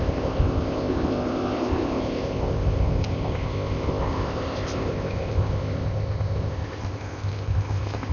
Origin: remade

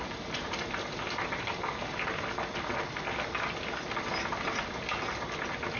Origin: recorded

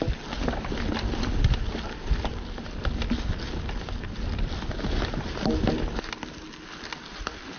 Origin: recorded